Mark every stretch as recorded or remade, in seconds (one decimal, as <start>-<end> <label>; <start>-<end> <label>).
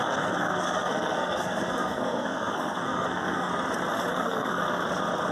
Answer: 0.0-3.5 remade; 3.5-4.1 recorded; 4.1-4.6 remade; 4.6-5.3 recorded